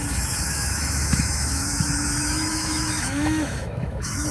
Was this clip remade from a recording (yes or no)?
yes